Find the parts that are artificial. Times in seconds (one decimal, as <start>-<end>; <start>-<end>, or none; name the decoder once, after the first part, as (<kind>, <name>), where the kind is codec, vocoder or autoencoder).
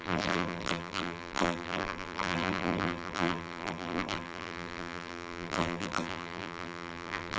0.0-7.4 (vocoder, BigVGAN v2)